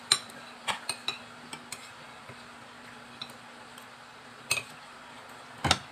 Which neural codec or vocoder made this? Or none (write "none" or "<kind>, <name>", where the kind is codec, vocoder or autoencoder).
none